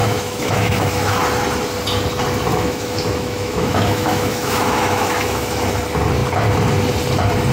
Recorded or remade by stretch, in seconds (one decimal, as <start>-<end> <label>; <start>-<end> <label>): 0.0-1.2 remade; 1.2-2.5 recorded; 2.5-5.6 remade; 5.6-7.5 recorded